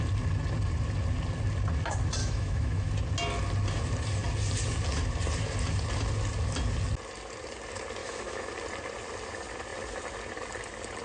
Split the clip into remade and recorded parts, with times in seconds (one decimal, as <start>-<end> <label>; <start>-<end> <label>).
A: 0.0-2.2 recorded; 2.2-2.9 remade; 2.9-8.0 recorded; 8.0-8.5 remade; 8.5-11.0 recorded